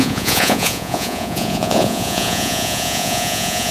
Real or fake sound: fake